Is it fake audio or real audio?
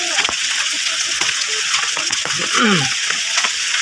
fake